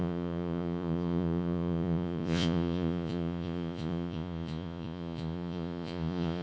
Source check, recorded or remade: remade